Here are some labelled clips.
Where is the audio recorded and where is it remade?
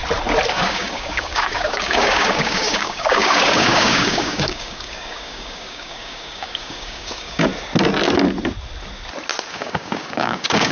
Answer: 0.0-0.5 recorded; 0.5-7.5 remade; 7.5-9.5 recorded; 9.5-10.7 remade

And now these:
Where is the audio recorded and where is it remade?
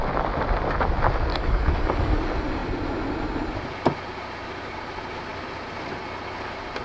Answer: 0.0-1.3 recorded; 1.3-2.2 remade; 2.2-6.8 recorded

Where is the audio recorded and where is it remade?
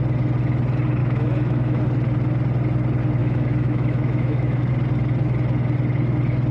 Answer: 0.0-1.0 recorded; 1.0-1.8 remade; 1.8-3.2 recorded; 3.2-4.7 remade; 4.7-6.5 recorded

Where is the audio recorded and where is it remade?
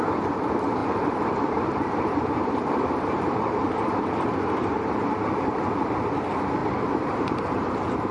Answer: 0.0-0.8 recorded; 0.8-5.7 remade; 5.7-6.6 recorded; 6.6-8.1 remade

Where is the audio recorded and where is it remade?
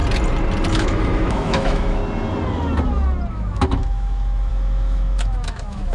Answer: 0.0-0.7 recorded; 0.7-2.0 remade; 2.0-3.3 recorded; 3.3-5.9 remade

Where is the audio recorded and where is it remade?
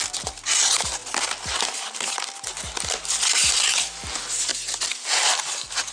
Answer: 0.0-5.9 recorded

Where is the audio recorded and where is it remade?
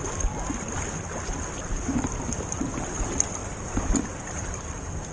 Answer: 0.0-5.1 recorded